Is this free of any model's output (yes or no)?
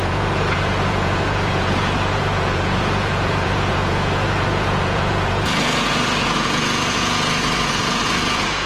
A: no